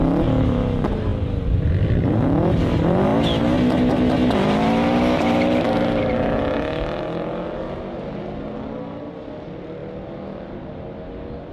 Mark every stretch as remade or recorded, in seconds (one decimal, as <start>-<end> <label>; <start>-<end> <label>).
0.0-11.5 recorded